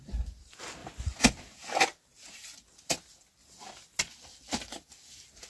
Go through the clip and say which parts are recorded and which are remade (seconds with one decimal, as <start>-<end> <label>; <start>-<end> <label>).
0.0-5.5 recorded